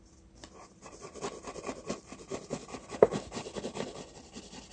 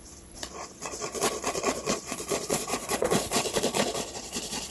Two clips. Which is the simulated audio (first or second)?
second